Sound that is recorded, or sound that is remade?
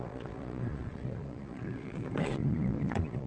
remade